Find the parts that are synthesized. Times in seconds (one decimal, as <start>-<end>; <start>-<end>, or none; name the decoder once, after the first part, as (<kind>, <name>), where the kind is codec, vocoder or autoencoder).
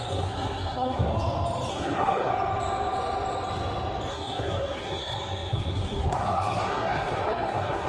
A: 0.0-1.1 (codec, SNAC); 1.7-2.3; 4.1-7.9